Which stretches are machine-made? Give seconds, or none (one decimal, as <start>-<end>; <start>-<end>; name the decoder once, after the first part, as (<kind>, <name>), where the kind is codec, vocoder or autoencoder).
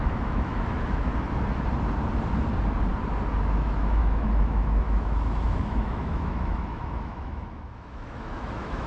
0.0-1.1 (autoencoder, DAC-VAE); 3.4-8.9